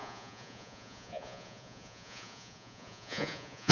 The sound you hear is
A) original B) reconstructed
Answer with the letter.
B